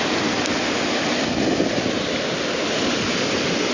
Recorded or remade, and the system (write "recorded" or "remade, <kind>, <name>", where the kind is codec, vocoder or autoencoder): recorded